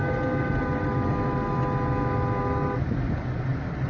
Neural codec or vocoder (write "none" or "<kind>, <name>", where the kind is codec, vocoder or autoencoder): none